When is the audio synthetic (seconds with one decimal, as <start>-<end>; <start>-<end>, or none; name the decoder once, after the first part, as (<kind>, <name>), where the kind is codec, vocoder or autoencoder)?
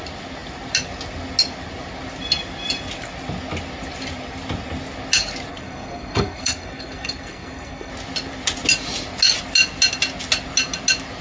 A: 5.5-7.9 (codec, SNAC)